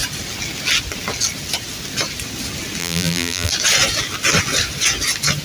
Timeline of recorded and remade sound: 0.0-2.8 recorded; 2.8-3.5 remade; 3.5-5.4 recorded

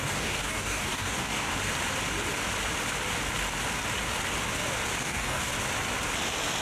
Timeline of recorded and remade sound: 0.0-1.5 remade; 1.5-5.0 recorded; 5.0-5.5 remade; 5.5-6.6 recorded

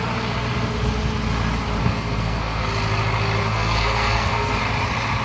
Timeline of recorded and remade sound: 0.0-1.8 recorded; 1.8-2.6 remade; 2.6-3.4 recorded; 3.4-4.6 remade; 4.6-5.2 recorded

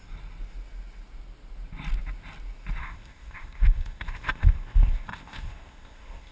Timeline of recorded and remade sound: 0.0-2.8 recorded; 2.8-6.3 remade

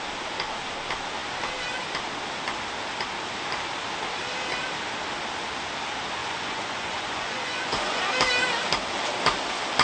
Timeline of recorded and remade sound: 0.0-6.2 recorded; 6.2-8.0 remade; 8.0-9.8 recorded

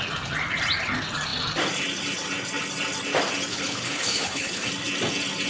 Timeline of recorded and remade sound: 0.0-3.5 recorded; 3.5-4.7 remade; 4.7-5.5 recorded

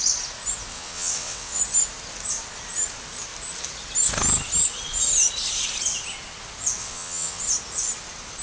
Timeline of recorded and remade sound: 0.0-0.7 recorded; 0.7-1.6 remade; 1.6-6.8 recorded; 6.8-7.4 remade; 7.4-8.4 recorded